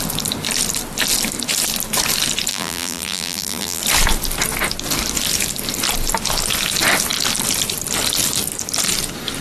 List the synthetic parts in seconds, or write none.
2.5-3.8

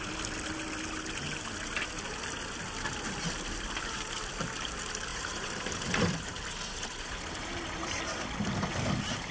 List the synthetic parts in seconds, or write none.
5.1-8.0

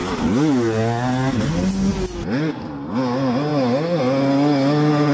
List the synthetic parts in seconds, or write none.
none